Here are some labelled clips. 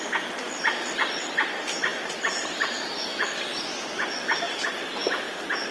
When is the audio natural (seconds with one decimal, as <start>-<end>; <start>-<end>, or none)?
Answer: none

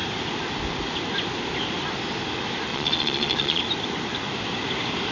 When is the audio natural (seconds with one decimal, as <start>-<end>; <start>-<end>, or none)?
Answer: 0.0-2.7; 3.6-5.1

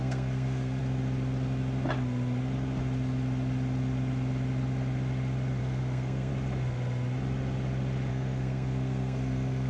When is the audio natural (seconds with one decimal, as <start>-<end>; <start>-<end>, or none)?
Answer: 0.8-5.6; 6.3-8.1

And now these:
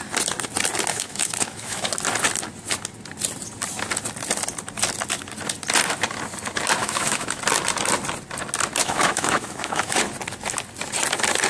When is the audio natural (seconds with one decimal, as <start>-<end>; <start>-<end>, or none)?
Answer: 0.0-0.9; 1.9-6.8; 7.4-8.8; 10.0-11.5

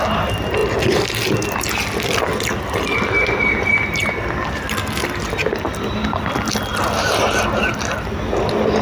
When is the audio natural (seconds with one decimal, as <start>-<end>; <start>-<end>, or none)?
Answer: 0.0-8.8